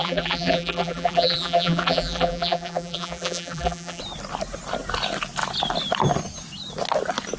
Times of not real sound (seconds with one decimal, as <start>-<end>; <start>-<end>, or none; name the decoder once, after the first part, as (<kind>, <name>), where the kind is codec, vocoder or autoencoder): 0.0-4.0 (vocoder, BigVGAN v2)